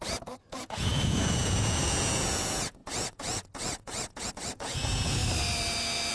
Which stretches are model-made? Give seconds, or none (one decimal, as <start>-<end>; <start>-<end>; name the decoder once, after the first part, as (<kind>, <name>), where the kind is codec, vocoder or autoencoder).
0.0-5.2 (vocoder, Vocos)